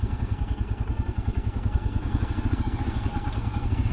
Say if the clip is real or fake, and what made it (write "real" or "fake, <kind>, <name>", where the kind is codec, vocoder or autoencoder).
fake, codec, SNAC